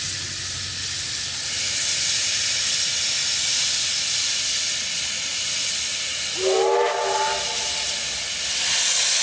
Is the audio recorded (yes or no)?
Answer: yes